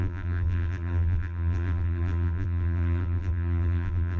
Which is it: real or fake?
fake